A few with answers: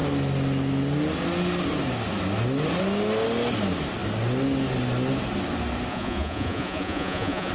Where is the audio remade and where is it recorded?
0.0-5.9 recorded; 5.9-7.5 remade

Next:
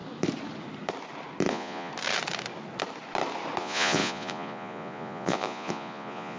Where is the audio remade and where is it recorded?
0.0-1.5 recorded; 1.5-1.9 remade; 1.9-3.6 recorded; 3.6-6.4 remade

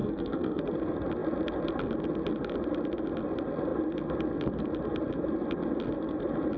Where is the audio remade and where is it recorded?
0.0-0.6 remade; 0.6-6.6 recorded

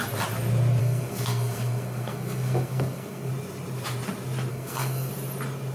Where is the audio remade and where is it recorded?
0.0-0.8 recorded; 0.8-3.3 remade; 3.3-4.5 recorded; 4.5-5.1 remade; 5.1-5.7 recorded

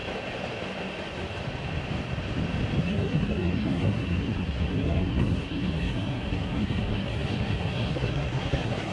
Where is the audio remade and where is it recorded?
0.0-2.8 recorded; 2.8-8.9 remade